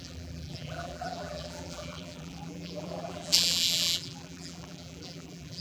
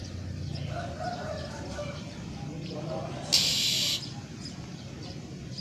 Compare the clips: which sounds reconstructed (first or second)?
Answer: first